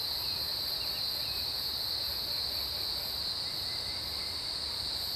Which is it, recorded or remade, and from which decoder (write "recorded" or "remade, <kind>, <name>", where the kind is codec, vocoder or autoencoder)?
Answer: recorded